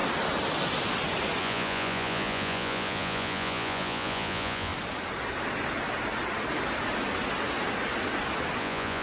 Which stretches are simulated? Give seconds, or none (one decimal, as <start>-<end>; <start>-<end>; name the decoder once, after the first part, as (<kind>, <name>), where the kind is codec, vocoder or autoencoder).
1.4-4.7 (vocoder, Vocos); 8.6-9.0